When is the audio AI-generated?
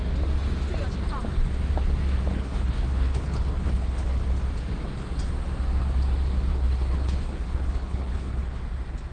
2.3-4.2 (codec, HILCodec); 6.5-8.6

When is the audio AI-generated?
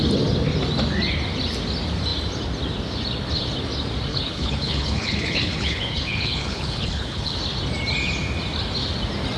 4.1-7.4 (codec, HILCodec)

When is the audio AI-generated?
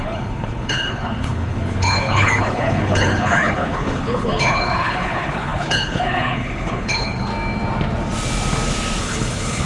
0.0-7.3 (codec, HILCodec); 9.0-9.7